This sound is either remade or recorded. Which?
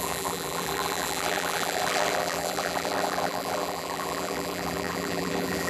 remade